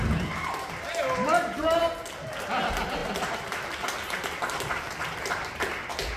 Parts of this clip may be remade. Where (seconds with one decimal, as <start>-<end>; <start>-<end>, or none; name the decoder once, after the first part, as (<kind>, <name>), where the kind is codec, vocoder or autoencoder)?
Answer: none

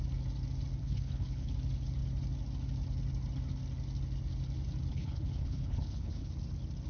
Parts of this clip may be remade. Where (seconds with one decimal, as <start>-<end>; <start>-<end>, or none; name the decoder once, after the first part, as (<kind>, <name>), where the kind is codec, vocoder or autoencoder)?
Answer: 0.8-1.5 (codec, HILCodec); 4.9-6.3

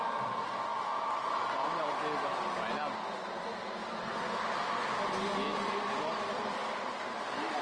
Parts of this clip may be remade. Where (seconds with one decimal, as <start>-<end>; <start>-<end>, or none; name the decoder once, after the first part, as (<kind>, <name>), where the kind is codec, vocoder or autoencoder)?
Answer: none

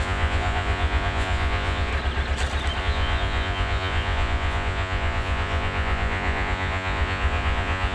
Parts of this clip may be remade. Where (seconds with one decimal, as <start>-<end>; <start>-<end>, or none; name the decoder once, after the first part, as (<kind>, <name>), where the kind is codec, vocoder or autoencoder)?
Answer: 0.0-1.9 (vocoder, Vocos); 2.8-7.9

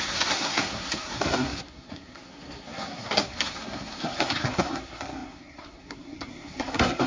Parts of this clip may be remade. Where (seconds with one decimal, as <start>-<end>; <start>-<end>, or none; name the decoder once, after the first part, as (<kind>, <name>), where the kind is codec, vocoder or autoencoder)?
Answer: 0.0-7.1 (codec, SNAC)

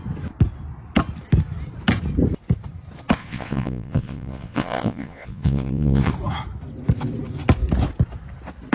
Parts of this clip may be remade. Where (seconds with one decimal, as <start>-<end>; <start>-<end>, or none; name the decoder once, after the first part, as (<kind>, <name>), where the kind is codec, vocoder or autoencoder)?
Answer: 3.2-6.1 (vocoder, Vocos)